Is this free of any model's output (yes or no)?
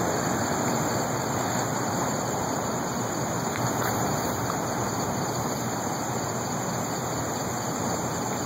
yes